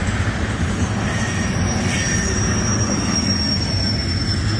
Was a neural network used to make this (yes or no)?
no